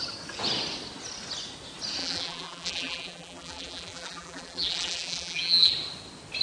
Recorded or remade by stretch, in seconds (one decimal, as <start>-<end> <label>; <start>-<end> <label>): 0.0-2.0 recorded; 2.0-5.7 remade; 5.7-6.4 recorded